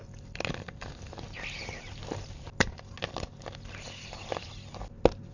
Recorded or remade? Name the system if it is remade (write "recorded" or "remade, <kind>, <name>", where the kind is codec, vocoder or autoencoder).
recorded